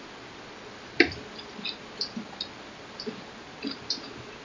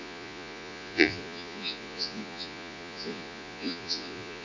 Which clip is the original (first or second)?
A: first